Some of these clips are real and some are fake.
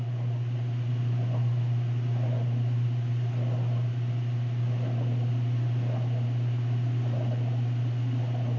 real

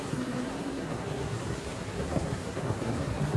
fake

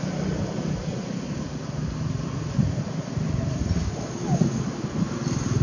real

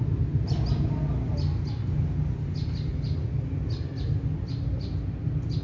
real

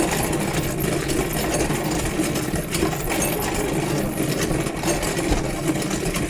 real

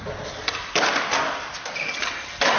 real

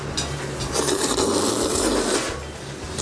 real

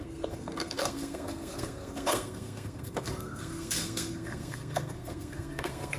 fake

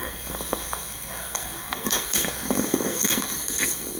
fake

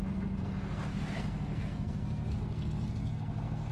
fake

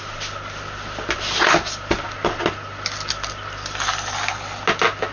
real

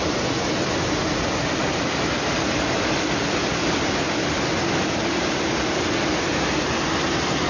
real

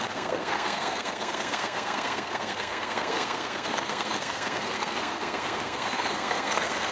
fake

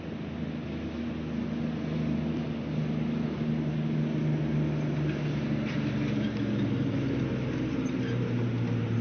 real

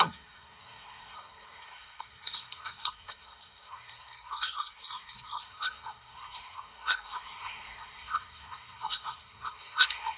fake